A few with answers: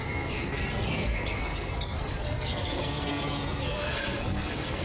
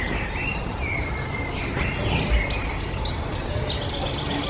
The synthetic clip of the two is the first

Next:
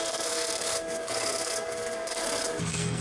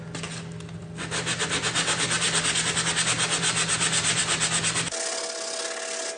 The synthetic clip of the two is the first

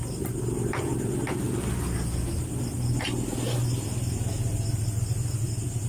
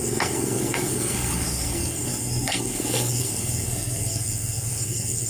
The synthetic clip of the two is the second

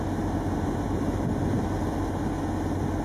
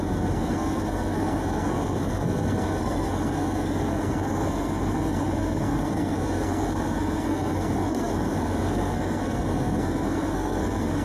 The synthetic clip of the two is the second